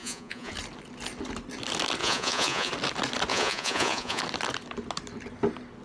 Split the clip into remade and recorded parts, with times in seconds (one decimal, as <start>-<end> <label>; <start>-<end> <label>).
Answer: 0.0-0.5 remade; 0.5-2.0 recorded; 2.0-2.7 remade; 2.7-3.3 recorded; 3.3-4.2 remade; 4.2-5.8 recorded